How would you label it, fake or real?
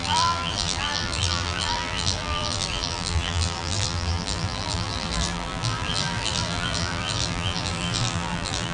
fake